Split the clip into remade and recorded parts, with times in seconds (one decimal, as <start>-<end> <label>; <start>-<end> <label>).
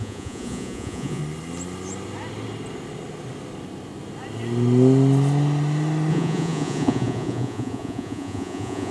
0.0-1.2 remade; 1.2-6.1 recorded; 6.1-8.9 remade